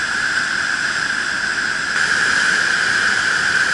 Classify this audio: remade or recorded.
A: recorded